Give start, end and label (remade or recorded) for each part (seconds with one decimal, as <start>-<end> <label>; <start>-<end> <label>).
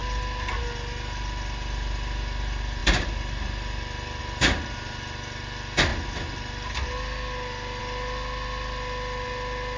0.0-9.8 recorded